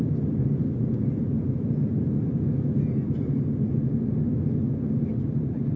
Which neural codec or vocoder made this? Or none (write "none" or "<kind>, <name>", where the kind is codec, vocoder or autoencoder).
none